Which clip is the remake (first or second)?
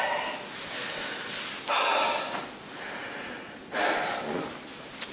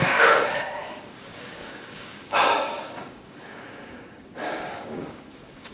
second